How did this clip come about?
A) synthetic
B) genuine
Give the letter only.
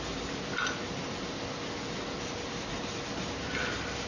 B